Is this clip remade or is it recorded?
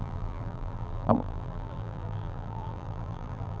remade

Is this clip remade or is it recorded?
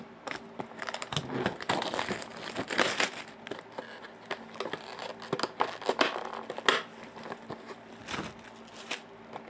recorded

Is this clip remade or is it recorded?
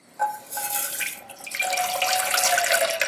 recorded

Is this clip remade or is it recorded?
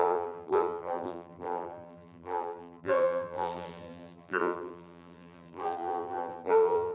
remade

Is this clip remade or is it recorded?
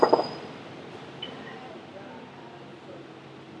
recorded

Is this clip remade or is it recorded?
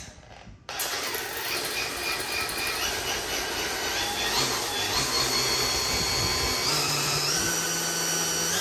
recorded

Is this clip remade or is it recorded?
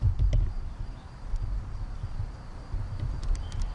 remade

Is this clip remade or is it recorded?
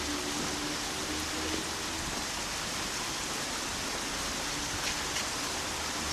recorded